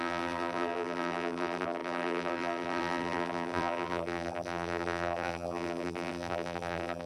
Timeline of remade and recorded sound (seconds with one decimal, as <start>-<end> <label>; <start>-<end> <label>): 0.0-7.1 remade